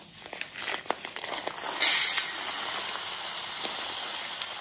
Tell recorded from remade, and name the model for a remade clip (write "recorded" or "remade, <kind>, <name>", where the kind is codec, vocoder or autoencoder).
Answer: recorded